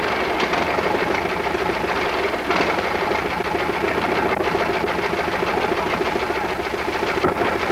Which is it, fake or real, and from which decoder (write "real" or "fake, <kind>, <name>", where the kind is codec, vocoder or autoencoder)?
real